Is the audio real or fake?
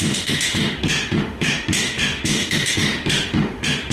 fake